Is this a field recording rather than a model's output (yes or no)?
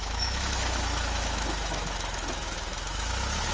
no